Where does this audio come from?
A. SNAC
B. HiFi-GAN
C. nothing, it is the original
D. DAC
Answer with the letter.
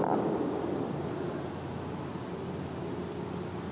C